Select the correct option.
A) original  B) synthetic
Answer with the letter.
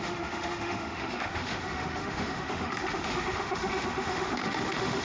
B